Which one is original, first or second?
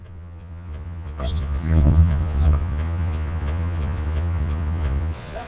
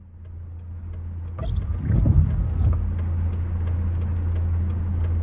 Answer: second